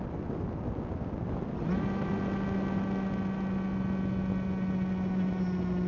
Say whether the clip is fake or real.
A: real